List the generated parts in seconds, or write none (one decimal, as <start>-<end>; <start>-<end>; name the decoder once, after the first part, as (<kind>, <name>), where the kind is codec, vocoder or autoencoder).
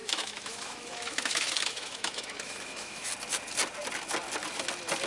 0.0-3.1 (autoencoder, DAC-VAE)